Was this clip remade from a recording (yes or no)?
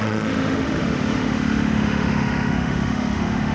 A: yes